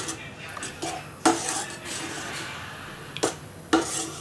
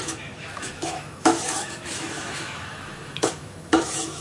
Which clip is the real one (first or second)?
first